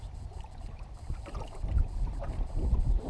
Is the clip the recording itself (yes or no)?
no